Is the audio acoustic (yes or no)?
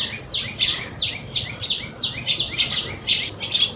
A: yes